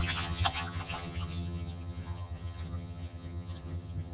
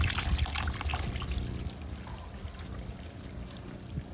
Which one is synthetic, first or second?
first